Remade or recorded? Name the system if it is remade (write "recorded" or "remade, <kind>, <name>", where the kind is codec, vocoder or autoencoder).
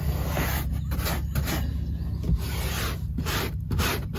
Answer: recorded